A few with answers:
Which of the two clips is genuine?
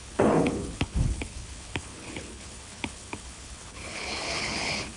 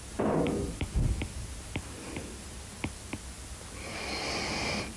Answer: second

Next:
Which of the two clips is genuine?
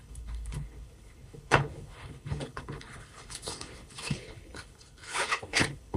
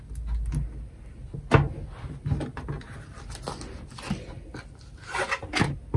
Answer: second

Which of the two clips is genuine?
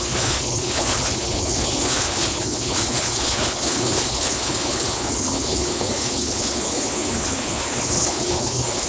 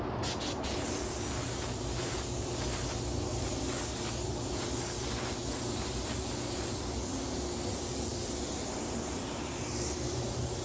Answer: second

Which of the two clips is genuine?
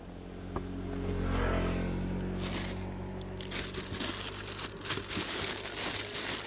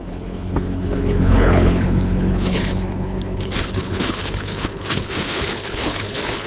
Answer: first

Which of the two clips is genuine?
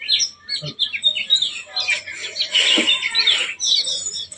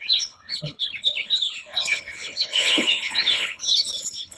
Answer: first